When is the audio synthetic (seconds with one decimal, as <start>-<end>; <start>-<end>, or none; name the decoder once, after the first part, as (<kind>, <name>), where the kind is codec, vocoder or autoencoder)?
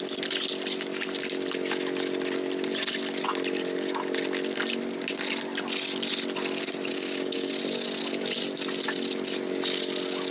6.9-7.5 (codec, DAC)